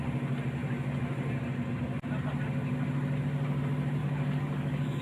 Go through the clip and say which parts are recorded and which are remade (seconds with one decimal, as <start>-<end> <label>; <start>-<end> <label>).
0.0-4.0 recorded; 4.0-5.0 remade